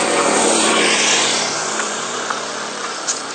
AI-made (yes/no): yes